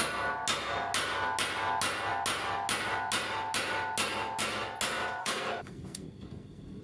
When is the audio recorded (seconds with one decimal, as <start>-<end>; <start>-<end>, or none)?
0.0-5.2